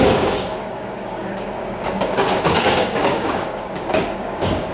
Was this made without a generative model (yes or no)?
no